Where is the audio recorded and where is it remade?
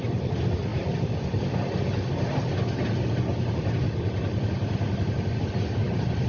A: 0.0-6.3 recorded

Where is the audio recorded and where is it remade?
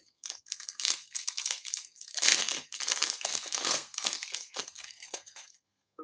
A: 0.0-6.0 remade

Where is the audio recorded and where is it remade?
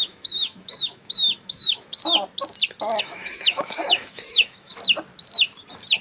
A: 0.0-2.0 remade; 2.0-3.0 recorded; 3.0-4.7 remade; 4.7-6.0 recorded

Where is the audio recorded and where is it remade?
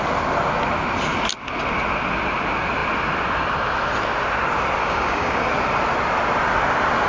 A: 0.0-4.8 recorded; 4.8-5.5 remade; 5.5-7.1 recorded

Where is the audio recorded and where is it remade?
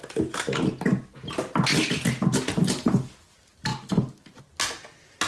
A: 0.0-5.3 recorded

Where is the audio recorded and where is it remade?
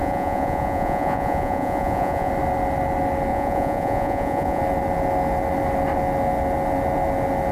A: 0.0-2.3 remade; 2.3-3.3 recorded; 3.3-4.6 remade; 4.6-7.5 recorded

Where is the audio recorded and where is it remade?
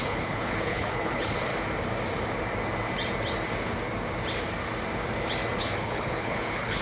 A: 0.0-1.5 remade; 1.5-5.6 recorded; 5.6-6.8 remade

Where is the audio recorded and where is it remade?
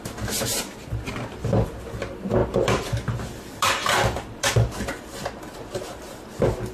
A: 0.0-2.4 recorded; 2.4-5.0 remade; 5.0-6.7 recorded